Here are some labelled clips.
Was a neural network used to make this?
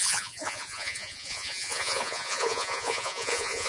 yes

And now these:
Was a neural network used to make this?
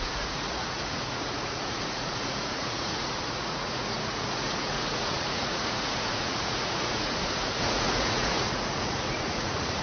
yes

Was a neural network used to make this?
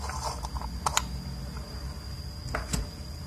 no